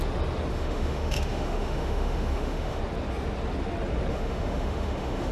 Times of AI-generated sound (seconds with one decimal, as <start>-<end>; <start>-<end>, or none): 0.5-2.8; 4.1-5.3